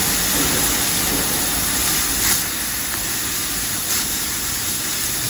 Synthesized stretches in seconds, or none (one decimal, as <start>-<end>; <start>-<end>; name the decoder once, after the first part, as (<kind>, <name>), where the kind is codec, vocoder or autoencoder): 1.6-4.8 (vocoder, BigVGAN v2)